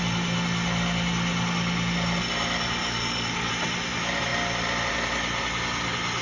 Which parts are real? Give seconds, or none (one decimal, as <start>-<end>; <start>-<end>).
0.0-2.8; 3.5-6.2